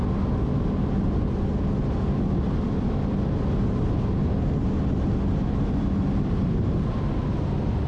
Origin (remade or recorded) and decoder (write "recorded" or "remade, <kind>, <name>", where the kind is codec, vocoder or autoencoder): recorded